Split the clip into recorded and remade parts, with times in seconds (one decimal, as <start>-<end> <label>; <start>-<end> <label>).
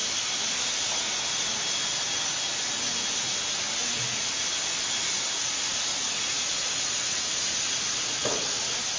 0.0-5.4 recorded; 5.4-8.6 remade; 8.6-9.0 recorded